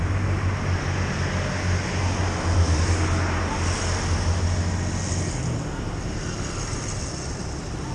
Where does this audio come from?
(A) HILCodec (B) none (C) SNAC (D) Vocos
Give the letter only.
B